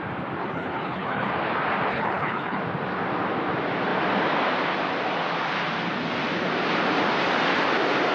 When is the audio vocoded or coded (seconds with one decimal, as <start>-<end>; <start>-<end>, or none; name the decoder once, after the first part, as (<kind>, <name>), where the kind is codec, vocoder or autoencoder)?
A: 0.4-1.3 (codec, HILCodec); 1.9-2.6